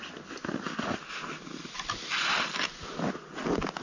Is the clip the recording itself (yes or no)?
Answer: yes